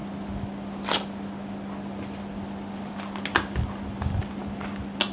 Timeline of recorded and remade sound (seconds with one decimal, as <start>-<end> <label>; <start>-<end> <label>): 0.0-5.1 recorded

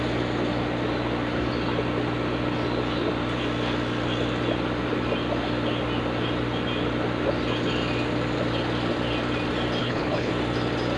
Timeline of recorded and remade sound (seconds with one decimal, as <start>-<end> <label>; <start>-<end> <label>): 0.0-9.8 recorded; 9.8-10.3 remade; 10.3-11.0 recorded

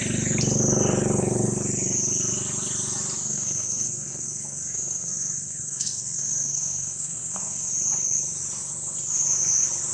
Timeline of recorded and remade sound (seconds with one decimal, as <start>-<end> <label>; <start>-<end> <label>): 0.0-3.2 recorded; 3.2-7.7 remade; 7.7-9.9 recorded

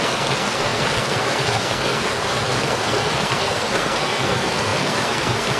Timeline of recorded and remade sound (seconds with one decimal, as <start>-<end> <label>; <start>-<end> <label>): 0.0-5.6 remade

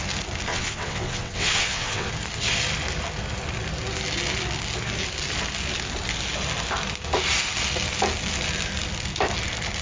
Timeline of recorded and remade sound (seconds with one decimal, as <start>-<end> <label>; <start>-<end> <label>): 0.0-0.5 recorded; 0.5-2.1 remade; 2.1-9.8 recorded

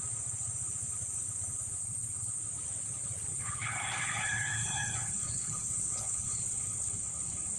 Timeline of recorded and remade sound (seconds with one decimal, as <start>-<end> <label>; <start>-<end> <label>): 0.0-1.8 recorded; 1.8-2.4 remade; 2.4-3.3 recorded; 3.3-7.6 remade

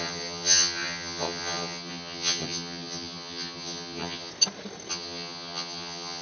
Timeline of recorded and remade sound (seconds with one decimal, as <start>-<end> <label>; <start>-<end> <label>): 0.0-4.3 remade; 4.3-4.9 recorded; 4.9-6.2 remade